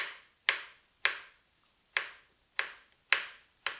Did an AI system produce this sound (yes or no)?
no